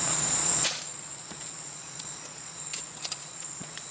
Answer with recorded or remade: remade